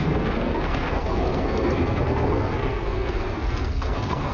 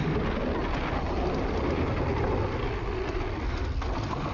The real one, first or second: second